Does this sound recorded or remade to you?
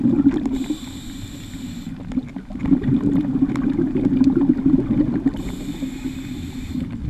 recorded